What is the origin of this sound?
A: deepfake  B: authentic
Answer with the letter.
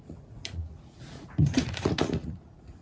A